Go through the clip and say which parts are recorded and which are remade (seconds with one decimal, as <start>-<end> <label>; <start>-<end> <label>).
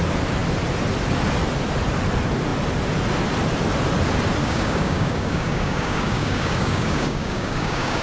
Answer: 0.0-4.4 recorded; 4.4-8.0 remade